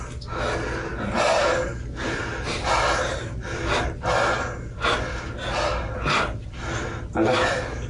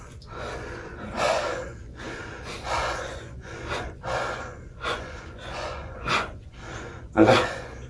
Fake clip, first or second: second